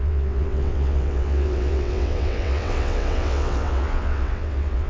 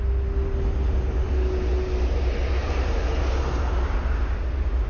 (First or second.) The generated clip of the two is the first